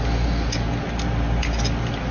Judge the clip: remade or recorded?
recorded